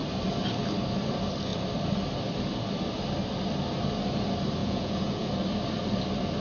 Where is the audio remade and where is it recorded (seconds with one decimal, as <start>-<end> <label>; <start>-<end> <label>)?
0.0-4.6 recorded; 4.6-5.3 remade; 5.3-6.4 recorded